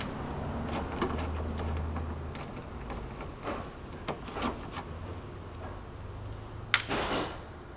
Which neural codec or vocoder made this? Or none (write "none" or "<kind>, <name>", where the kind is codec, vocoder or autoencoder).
none